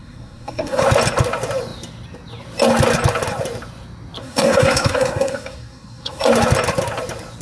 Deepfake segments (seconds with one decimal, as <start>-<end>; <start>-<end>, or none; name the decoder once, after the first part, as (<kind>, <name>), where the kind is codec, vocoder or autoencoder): 0.0-0.8 (codec, SNAC); 4.2-6.2